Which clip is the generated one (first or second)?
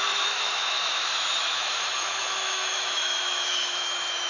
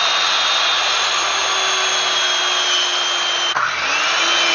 first